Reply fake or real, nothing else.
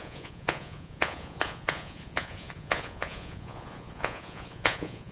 fake